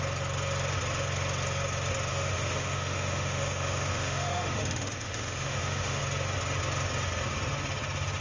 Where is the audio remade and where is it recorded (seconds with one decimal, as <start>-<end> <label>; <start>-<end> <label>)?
0.0-2.1 recorded; 2.1-6.0 remade; 6.0-8.2 recorded